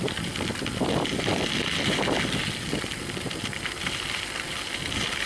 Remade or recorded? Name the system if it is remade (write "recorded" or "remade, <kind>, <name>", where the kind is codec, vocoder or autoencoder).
recorded